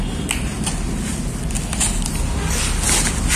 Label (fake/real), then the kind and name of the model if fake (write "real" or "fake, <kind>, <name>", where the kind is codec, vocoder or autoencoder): real